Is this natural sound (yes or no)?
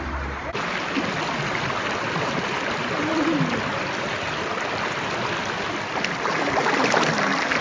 yes